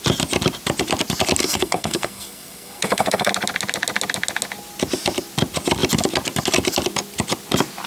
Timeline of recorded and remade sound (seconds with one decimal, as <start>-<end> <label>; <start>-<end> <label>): 0.0-1.4 recorded; 1.4-3.3 remade; 3.3-7.9 recorded